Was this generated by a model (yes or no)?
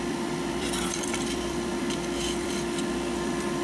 yes